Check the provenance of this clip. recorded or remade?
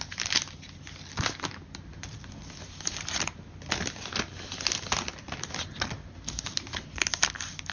recorded